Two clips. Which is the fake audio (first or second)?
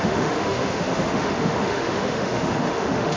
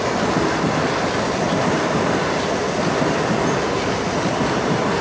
first